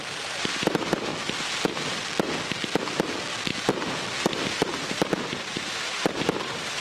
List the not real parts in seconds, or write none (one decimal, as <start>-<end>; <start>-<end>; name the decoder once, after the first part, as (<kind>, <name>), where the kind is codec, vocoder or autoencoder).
0.0-1.1 (vocoder, BigVGAN v2); 4.5-6.8